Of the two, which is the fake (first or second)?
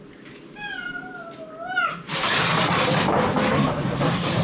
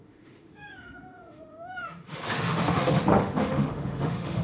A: second